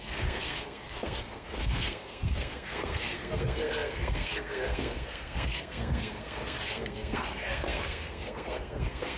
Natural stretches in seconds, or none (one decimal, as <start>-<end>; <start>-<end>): none